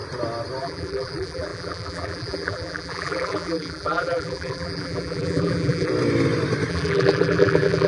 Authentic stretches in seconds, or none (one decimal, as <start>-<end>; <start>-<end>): 0.0-0.6; 5.9-6.7